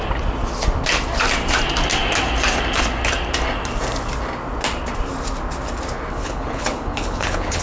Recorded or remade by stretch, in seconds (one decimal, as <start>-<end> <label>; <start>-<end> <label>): 0.0-6.1 recorded; 6.1-7.6 remade

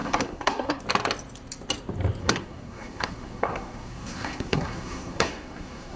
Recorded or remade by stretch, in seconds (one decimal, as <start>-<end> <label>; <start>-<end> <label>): 0.0-0.8 remade; 0.8-2.2 recorded; 2.2-6.0 remade

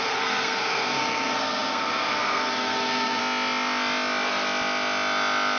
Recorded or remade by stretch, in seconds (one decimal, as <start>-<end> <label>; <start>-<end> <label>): 0.0-3.2 remade; 3.2-5.6 recorded

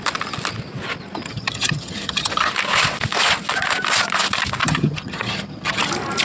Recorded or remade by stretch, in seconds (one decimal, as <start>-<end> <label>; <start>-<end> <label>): 0.0-1.2 recorded; 1.2-2.5 remade; 2.5-4.6 recorded; 4.6-5.8 remade; 5.8-6.2 recorded